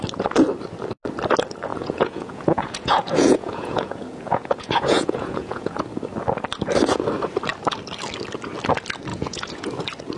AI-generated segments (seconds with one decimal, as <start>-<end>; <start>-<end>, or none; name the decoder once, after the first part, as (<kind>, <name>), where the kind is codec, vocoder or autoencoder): 1.7-5.8 (vocoder, Vocos); 9.1-9.7